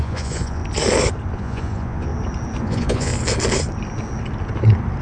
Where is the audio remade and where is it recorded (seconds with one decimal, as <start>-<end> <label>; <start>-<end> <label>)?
0.0-0.6 remade; 0.6-1.3 recorded; 1.3-2.1 remade; 2.1-2.6 recorded; 2.6-3.1 remade; 3.1-5.0 recorded